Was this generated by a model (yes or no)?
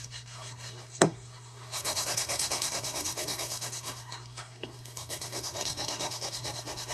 yes